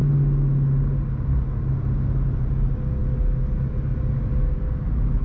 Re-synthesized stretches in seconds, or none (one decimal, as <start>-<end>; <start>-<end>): none